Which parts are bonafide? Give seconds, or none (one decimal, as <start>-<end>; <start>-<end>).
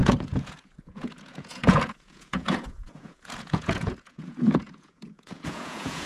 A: none